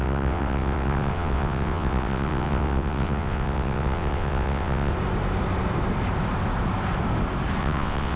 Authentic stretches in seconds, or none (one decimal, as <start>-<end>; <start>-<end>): 4.9-7.6